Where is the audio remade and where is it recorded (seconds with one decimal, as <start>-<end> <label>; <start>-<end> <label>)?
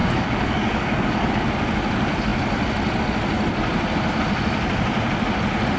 0.0-1.3 remade; 1.3-5.8 recorded